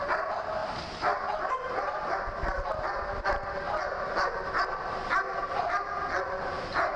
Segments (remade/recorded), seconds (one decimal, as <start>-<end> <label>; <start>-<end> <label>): 0.0-7.0 recorded